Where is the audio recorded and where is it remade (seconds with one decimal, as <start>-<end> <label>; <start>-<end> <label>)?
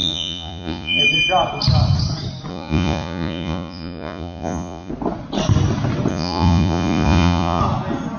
0.0-1.0 remade; 1.0-2.5 recorded; 2.5-4.9 remade; 4.9-6.1 recorded; 6.1-7.6 remade; 7.6-8.2 recorded